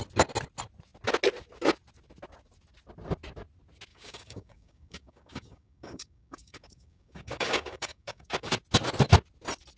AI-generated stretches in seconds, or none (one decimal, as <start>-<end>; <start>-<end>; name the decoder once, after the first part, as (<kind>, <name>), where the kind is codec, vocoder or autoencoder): 3.9-8.5 (codec, DAC)